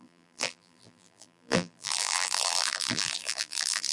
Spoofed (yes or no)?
yes